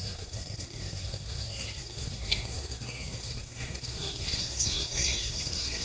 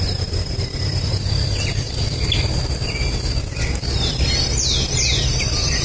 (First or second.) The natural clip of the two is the second